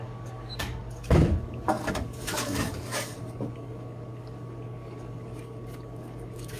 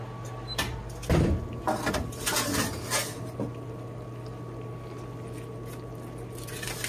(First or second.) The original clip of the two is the second